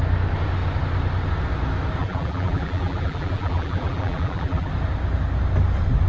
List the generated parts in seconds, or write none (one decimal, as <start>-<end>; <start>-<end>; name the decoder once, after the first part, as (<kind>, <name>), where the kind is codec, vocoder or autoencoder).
2.0-4.7 (vocoder, BigVGAN v2)